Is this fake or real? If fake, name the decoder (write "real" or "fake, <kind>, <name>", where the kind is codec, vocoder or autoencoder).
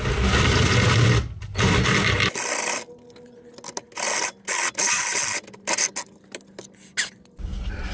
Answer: real